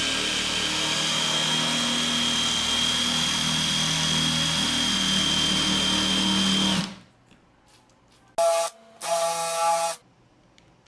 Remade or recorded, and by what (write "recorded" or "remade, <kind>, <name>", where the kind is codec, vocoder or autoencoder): recorded